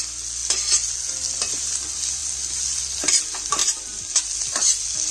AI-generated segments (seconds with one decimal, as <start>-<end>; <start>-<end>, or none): none